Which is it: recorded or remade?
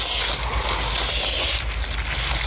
recorded